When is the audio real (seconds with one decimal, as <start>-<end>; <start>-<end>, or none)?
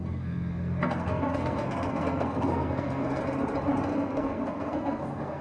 3.2-3.9